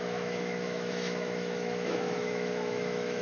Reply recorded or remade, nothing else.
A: remade